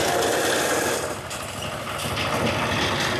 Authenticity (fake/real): real